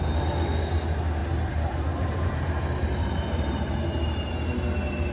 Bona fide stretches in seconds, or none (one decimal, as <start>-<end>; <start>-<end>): 0.0-1.2; 4.3-5.1